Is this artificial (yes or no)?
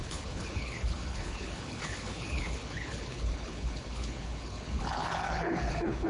yes